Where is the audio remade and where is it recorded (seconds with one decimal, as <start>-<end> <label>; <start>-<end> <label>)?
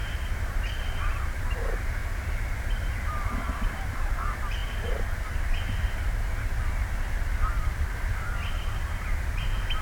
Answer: 0.0-2.0 remade; 2.0-3.1 recorded; 3.1-9.8 remade